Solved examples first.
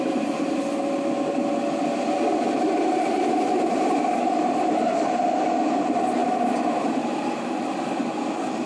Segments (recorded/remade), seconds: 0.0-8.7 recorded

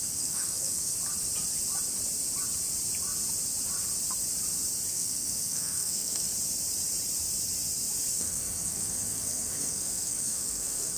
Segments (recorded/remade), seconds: 0.0-0.9 remade; 0.9-4.9 recorded; 4.9-6.3 remade; 6.3-8.1 recorded; 8.1-11.0 remade